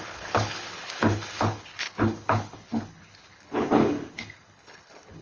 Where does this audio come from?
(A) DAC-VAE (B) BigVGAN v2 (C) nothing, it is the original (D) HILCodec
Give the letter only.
D